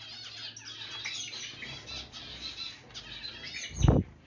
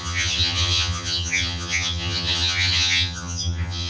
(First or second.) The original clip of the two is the first